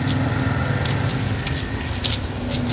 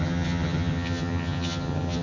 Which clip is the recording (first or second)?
first